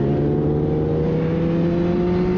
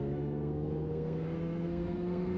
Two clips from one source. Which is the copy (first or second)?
second